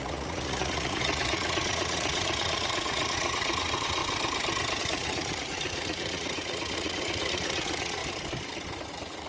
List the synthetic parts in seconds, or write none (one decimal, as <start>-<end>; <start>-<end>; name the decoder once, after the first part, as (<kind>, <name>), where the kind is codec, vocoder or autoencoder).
0.0-4.0 (vocoder, Vocos); 4.8-8.0; 8.9-9.3